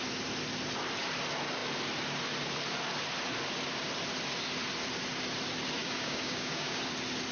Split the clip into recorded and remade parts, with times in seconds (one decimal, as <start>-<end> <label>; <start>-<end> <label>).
0.0-5.8 recorded; 5.8-6.8 remade; 6.8-7.3 recorded